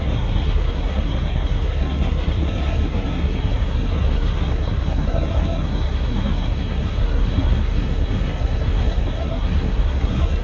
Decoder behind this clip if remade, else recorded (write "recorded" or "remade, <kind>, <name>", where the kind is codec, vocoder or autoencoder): remade, codec, SNAC